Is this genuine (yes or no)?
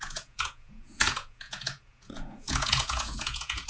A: no